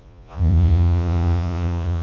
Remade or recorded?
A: remade